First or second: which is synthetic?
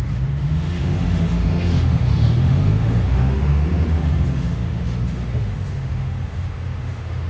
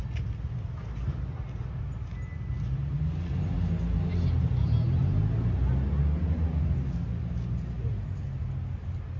first